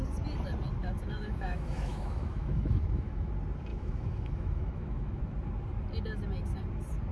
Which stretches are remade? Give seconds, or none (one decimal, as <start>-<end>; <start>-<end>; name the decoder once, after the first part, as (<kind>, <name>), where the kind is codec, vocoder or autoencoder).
0.8-3.3 (autoencoder, DAC-VAE); 3.7-5.2